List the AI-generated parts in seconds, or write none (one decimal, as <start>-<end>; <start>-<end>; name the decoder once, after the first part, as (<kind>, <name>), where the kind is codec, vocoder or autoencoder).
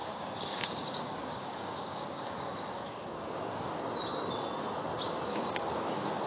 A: 0.0-3.8 (codec, DAC); 5.3-6.3